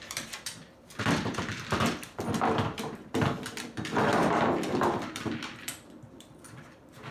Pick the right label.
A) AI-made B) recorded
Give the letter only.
A